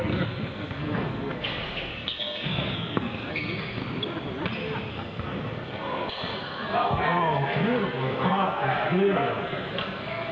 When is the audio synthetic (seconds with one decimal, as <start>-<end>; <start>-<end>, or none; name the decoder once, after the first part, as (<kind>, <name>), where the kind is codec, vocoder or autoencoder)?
0.0-3.8 (codec, SNAC); 4.9-10.3